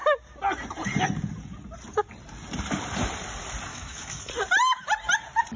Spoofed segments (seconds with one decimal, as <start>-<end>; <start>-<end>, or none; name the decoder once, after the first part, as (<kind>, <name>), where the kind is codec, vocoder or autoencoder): 3.7-4.3 (autoencoder, DAC-VAE)